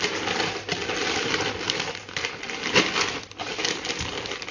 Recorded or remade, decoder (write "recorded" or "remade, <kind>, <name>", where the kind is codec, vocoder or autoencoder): recorded